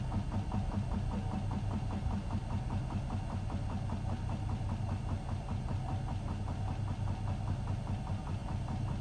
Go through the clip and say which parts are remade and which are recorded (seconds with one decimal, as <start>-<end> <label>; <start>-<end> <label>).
0.0-9.0 recorded